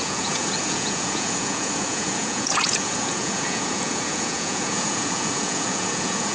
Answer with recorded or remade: remade